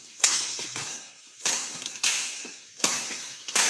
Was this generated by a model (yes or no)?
yes